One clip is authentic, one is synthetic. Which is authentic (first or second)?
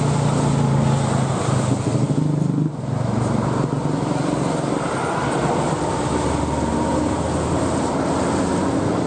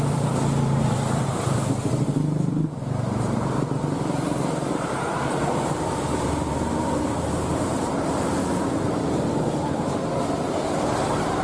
first